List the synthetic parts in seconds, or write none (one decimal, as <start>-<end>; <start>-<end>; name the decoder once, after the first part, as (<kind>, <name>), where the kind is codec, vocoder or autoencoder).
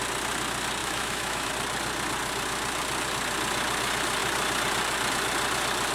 0.8-1.5 (autoencoder, DAC-VAE)